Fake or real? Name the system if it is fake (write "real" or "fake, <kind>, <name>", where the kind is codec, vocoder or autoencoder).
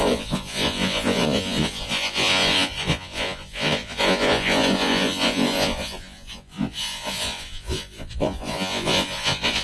fake, vocoder, Vocos